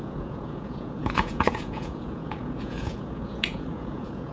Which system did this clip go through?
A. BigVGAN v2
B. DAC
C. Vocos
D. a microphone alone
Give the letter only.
C